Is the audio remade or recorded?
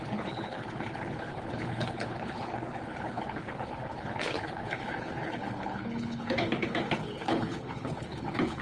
remade